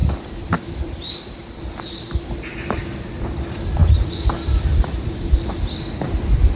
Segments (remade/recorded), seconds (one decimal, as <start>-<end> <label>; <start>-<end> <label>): 0.0-3.8 remade; 3.8-5.8 recorded; 5.8-6.6 remade